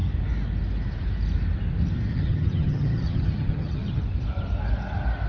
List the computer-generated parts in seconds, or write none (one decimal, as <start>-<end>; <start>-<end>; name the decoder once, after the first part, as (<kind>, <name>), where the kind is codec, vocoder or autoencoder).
2.1-4.0 (vocoder, HiFi-GAN)